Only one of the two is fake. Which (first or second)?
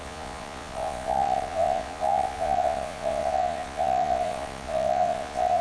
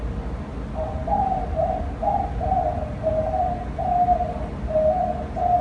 first